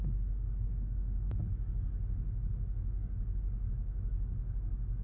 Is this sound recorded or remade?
remade